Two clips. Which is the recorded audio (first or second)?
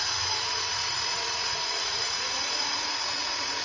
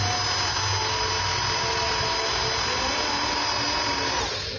second